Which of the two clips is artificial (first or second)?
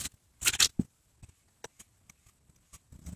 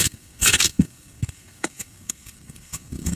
second